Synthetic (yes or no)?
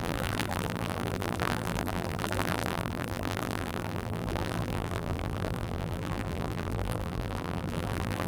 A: yes